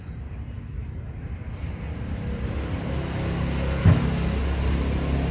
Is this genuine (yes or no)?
yes